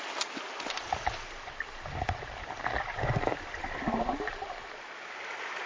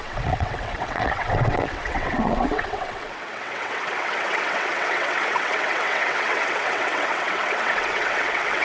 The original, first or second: first